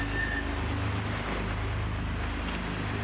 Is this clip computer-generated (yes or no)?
no